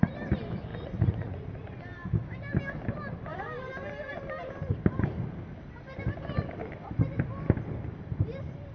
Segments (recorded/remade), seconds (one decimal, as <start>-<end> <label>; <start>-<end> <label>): 0.0-0.7 recorded; 0.7-1.8 remade; 1.8-8.7 recorded